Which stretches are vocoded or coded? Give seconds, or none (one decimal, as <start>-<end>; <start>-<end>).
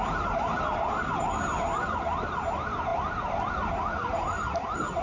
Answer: none